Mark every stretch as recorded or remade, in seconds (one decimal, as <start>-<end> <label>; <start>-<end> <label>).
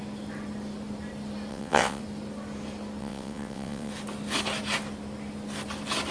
0.0-1.5 recorded; 1.5-2.0 remade; 2.0-3.0 recorded; 3.0-3.9 remade; 3.9-6.1 recorded